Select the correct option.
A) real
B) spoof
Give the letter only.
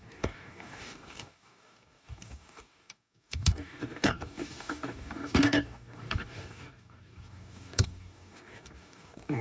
B